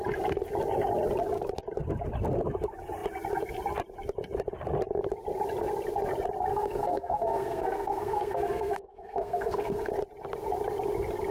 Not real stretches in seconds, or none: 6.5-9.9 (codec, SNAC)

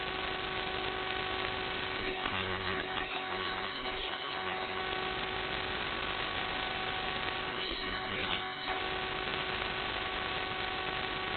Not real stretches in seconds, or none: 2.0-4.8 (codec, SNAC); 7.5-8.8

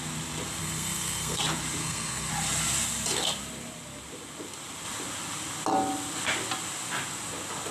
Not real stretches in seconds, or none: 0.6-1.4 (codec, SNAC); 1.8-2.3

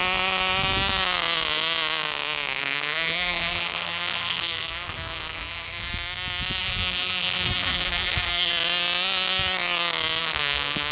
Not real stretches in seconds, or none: 2.6-5.9 (codec, SNAC); 6.6-8.5; 10.2-10.9